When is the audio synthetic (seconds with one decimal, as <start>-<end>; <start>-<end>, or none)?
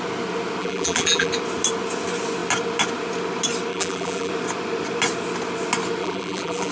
0.6-1.3; 3.7-4.3; 6.0-6.7